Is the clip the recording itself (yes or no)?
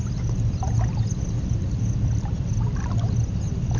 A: yes